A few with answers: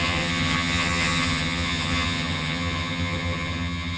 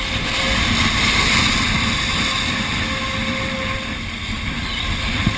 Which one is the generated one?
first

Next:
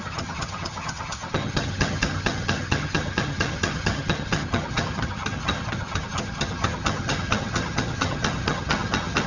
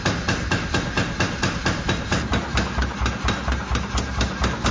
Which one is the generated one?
first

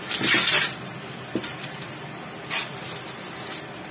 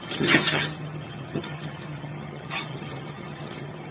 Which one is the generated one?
second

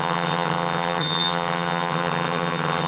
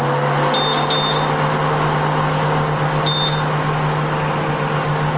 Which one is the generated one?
first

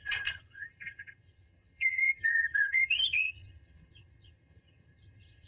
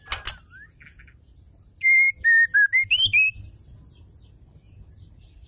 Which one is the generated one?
first